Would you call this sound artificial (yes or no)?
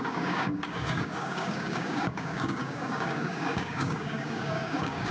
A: yes